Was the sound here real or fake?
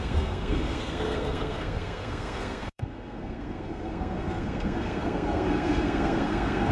fake